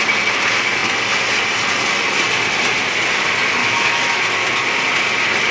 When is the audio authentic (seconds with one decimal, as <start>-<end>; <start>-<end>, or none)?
0.0-3.6; 4.2-5.5